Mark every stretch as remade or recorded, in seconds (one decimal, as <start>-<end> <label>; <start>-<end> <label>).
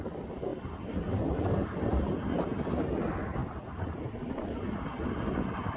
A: 0.0-5.8 recorded